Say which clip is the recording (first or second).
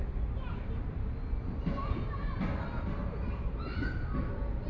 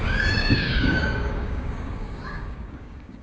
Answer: first